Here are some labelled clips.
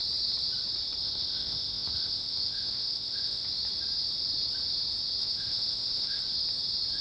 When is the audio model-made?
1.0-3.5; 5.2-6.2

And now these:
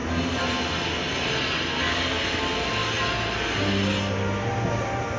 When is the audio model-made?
none

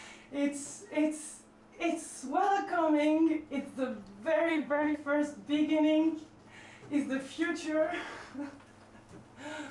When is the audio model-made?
4.5-5.0

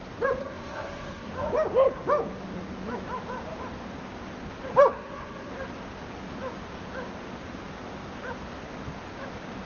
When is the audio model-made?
0.4-1.3; 4.9-5.5

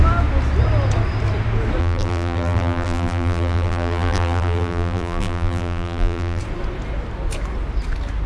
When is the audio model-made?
1.8-6.4

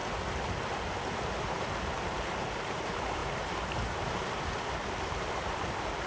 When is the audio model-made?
1.8-6.1